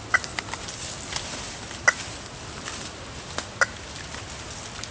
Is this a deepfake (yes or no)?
no